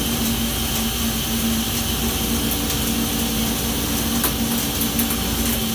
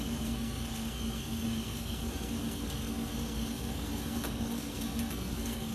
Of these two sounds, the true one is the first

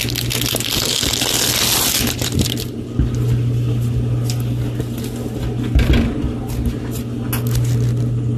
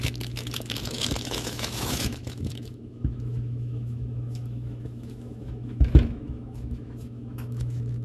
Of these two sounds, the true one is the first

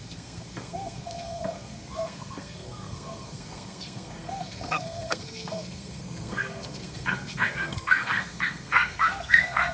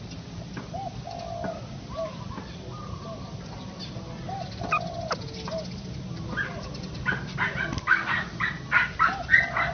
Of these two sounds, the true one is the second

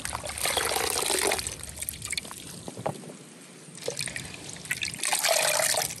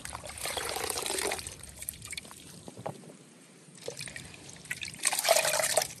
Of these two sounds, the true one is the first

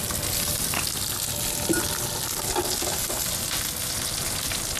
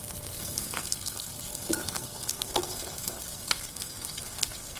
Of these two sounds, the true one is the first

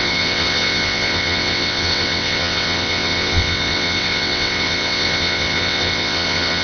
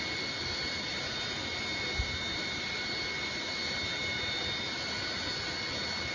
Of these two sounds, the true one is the second